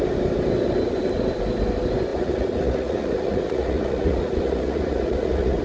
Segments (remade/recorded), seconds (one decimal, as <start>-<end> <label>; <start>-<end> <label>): 0.0-2.1 recorded; 2.1-5.6 remade

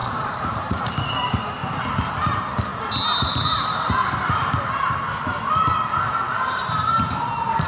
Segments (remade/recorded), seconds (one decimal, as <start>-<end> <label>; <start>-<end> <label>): 0.0-1.6 remade; 1.6-2.1 recorded; 2.1-2.7 remade; 2.7-6.3 recorded; 6.3-7.7 remade

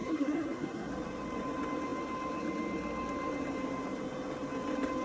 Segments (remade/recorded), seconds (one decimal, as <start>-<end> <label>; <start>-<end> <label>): 0.0-0.9 remade; 0.9-5.0 recorded

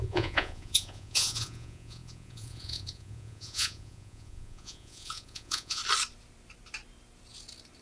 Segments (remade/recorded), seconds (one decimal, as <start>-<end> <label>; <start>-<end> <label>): 0.0-5.8 remade; 5.8-7.8 recorded